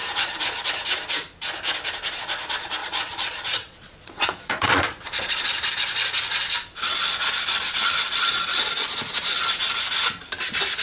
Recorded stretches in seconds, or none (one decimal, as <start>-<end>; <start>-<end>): 0.0-2.8; 5.7-10.8